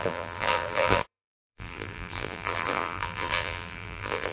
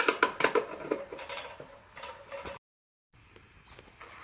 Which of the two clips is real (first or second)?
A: second